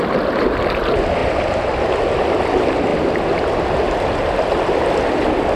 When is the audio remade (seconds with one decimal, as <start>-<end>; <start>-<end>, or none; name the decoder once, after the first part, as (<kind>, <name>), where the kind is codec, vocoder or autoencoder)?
none

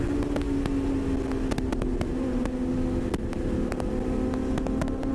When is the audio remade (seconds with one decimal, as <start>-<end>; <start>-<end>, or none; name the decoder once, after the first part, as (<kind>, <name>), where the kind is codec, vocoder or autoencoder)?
none

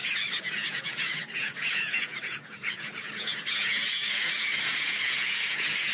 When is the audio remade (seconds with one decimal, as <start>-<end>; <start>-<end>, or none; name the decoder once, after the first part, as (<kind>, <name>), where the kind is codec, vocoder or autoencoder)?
0.0-5.9 (vocoder, Vocos)

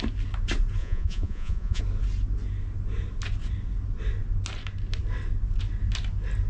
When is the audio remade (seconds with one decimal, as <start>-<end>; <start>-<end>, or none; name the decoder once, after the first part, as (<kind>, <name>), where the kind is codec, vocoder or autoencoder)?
0.8-1.8 (vocoder, Vocos)

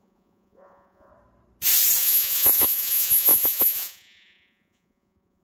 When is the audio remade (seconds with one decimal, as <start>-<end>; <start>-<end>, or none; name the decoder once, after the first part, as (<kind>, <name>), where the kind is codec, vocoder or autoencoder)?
0.0-1.1 (vocoder, Vocos); 2.0-5.4

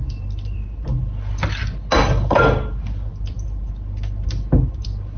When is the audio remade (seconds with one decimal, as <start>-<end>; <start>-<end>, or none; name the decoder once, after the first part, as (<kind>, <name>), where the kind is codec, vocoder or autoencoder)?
none